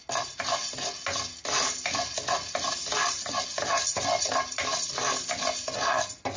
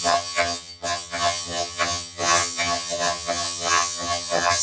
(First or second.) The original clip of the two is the first